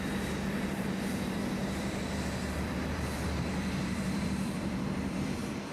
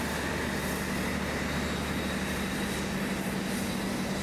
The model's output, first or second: first